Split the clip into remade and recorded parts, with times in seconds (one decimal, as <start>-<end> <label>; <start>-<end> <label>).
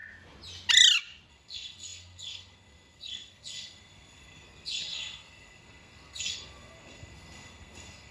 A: 0.0-1.3 recorded; 1.3-8.1 remade